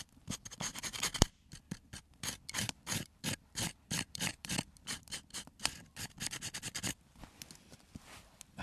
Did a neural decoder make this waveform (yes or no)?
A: yes